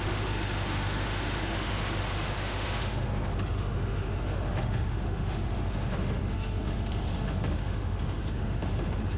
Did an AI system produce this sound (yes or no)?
yes